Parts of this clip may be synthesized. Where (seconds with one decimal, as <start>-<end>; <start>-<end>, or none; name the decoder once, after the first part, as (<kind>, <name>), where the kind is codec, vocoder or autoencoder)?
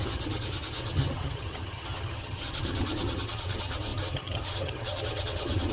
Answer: 0.0-5.7 (vocoder, HiFi-GAN)